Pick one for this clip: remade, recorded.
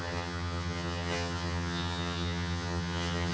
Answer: remade